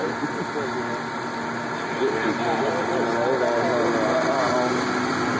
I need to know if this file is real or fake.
real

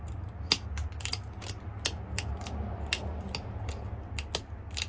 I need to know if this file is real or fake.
real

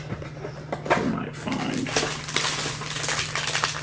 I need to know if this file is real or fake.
real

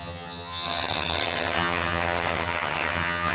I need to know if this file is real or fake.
fake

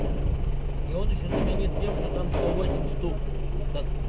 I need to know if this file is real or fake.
real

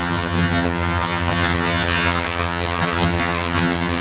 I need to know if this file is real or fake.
fake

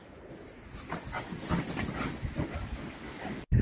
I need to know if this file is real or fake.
real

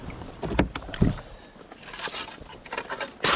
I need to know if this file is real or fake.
real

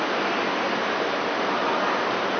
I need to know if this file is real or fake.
real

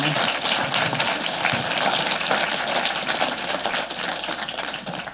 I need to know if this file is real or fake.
real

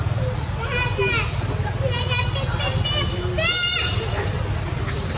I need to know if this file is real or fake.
real